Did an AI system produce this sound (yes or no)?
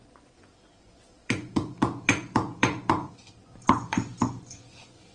yes